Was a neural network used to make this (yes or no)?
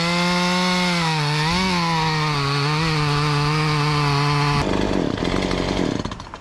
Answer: no